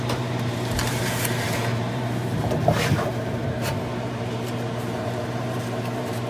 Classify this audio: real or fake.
fake